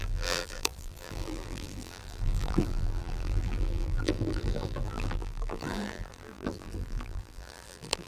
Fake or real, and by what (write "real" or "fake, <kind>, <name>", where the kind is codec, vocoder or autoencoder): fake, vocoder, BigVGAN v2